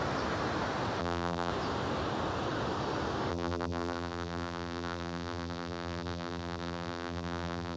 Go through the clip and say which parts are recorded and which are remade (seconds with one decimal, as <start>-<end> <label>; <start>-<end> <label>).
0.0-1.0 recorded; 1.0-1.5 remade; 1.5-3.3 recorded; 3.3-7.8 remade